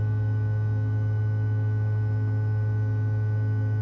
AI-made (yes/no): no